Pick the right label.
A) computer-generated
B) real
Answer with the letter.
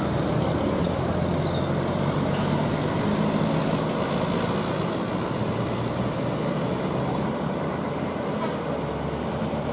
B